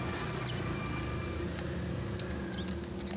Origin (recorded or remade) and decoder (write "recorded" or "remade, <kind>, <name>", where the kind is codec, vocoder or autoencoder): recorded